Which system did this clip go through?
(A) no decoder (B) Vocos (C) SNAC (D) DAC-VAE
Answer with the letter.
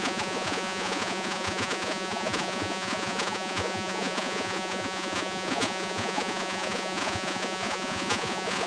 B